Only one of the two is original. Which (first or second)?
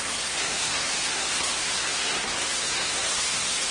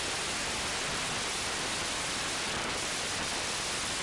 second